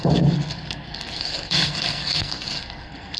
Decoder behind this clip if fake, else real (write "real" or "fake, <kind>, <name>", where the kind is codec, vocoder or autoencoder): fake, codec, SNAC